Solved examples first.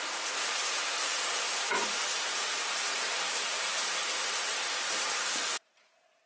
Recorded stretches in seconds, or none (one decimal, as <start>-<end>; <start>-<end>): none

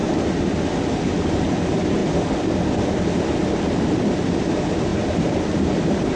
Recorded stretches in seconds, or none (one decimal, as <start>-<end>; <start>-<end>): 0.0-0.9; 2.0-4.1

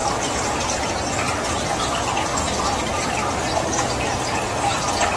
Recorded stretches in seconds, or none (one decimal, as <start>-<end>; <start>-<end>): 1.8-5.2

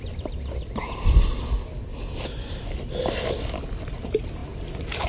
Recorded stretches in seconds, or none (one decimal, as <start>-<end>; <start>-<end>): 0.0-4.4